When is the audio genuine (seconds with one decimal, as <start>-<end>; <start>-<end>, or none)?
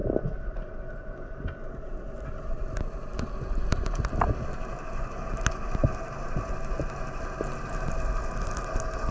0.0-9.1